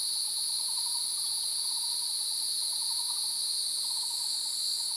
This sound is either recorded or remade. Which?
recorded